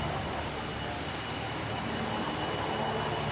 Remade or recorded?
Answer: recorded